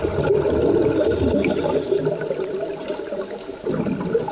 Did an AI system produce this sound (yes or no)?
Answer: no